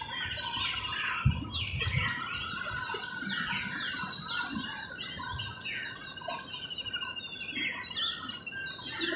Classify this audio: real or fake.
real